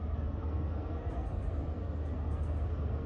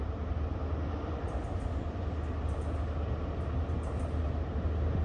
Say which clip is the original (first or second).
second